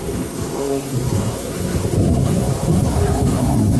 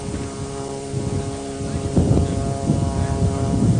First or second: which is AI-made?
first